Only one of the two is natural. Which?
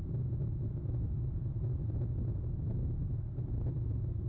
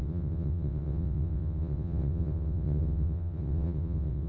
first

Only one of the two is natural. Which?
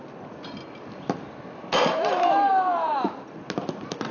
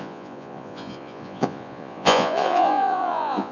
first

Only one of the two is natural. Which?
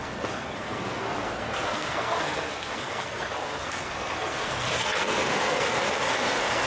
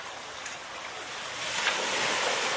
second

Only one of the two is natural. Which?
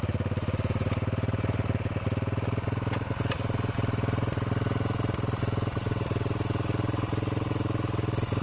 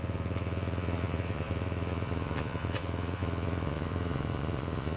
first